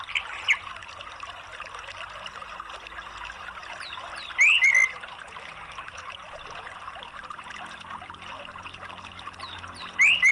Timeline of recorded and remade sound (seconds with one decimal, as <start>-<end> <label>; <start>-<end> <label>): 0.0-10.3 recorded